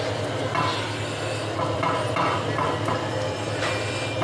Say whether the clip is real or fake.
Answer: real